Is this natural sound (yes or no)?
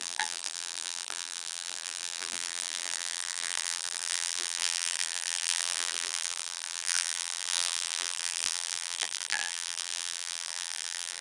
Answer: no